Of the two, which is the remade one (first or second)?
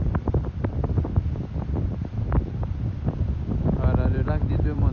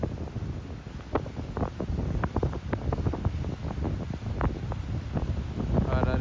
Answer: first